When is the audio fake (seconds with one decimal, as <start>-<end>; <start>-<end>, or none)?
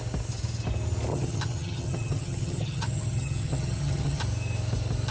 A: 1.1-4.2